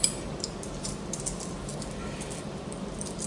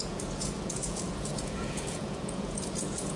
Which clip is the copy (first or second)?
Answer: second